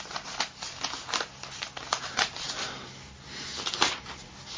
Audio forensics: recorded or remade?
recorded